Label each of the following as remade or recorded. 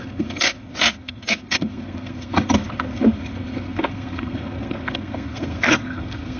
remade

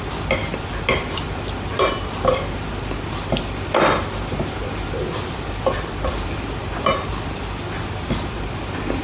recorded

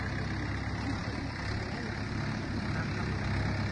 recorded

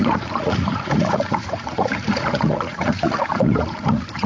remade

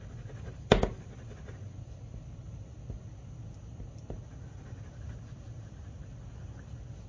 recorded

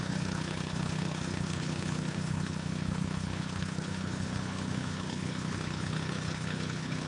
remade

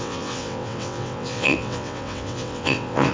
remade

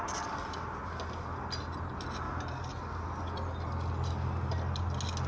recorded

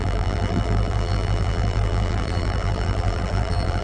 remade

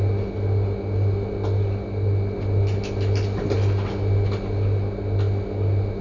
recorded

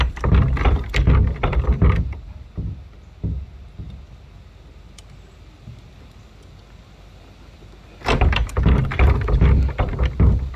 recorded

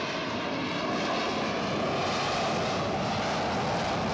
recorded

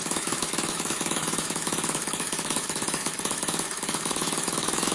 remade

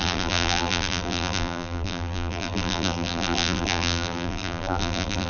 remade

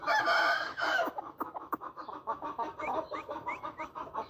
remade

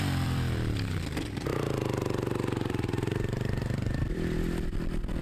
remade